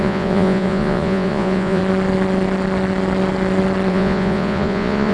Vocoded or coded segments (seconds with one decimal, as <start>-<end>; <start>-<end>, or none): 0.0-1.8; 3.9-5.1